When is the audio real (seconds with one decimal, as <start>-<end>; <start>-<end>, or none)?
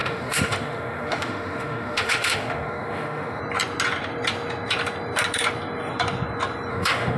3.4-6.7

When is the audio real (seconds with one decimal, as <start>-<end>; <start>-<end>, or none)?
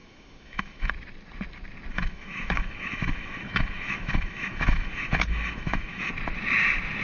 0.9-1.9; 6.1-7.0